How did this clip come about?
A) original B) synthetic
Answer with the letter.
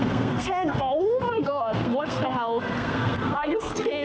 B